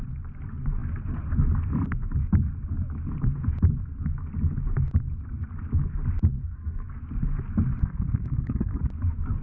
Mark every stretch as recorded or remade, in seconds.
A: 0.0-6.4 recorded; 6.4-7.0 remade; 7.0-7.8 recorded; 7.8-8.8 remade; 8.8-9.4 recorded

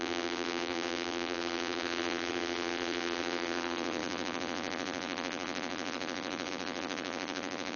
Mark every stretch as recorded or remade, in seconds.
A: 0.0-7.8 remade

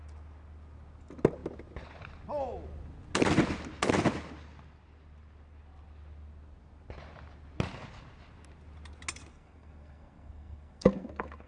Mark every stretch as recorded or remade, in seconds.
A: 0.0-9.3 recorded; 9.3-11.5 remade